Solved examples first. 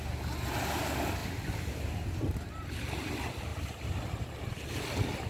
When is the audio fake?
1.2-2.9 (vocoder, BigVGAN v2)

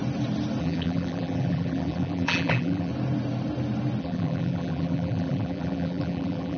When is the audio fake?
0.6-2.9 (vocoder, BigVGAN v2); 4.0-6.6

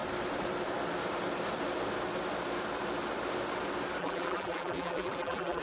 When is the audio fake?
4.0-5.6 (vocoder, BigVGAN v2)